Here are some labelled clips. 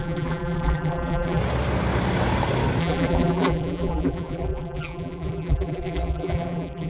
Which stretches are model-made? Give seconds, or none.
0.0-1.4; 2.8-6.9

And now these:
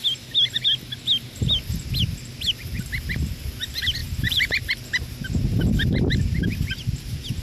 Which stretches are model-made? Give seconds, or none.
4.0-4.5